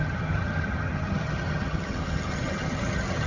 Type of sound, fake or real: fake